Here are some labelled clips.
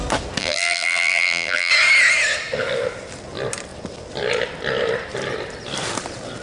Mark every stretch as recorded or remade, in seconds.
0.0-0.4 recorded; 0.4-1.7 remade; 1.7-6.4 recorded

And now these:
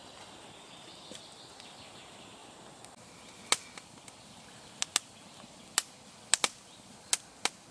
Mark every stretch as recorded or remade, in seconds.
0.0-7.7 recorded

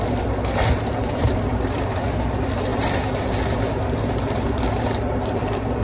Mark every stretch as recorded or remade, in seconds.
0.0-5.8 remade